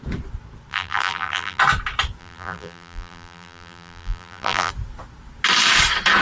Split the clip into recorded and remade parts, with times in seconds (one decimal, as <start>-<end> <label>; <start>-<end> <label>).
0.0-0.7 recorded; 0.7-1.6 remade; 1.6-2.2 recorded; 2.2-4.7 remade; 4.7-6.2 recorded